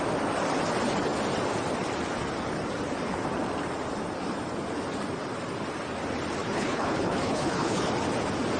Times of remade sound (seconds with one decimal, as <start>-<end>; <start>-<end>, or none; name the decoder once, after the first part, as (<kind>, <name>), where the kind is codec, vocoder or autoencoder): 6.4-7.9 (codec, HILCodec)